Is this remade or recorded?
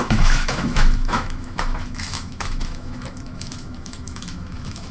remade